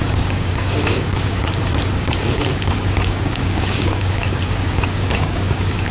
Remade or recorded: remade